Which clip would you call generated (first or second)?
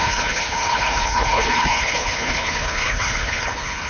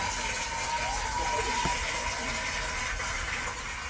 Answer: first